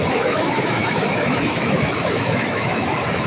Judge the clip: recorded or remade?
remade